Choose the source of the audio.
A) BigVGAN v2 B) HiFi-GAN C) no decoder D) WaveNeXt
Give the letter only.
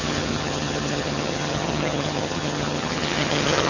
B